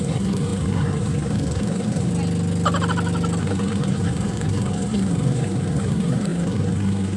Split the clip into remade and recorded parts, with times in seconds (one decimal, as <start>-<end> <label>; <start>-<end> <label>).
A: 0.0-2.1 remade; 2.1-3.4 recorded; 3.4-7.2 remade